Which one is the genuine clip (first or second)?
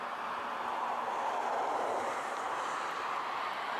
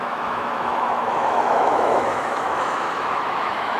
first